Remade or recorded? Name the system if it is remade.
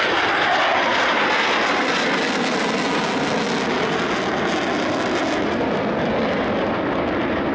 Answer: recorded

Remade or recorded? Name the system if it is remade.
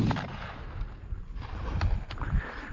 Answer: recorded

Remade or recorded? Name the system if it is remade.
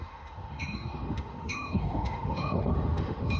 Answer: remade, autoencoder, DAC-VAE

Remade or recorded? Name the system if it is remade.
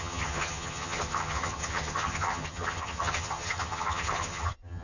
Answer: remade, vocoder, HiFi-GAN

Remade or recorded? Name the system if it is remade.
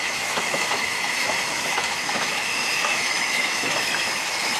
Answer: remade, autoencoder, DAC-VAE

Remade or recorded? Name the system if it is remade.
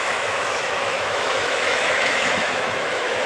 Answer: remade, autoencoder, DAC-VAE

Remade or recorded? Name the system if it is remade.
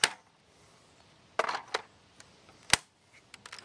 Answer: recorded